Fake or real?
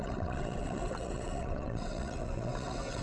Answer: fake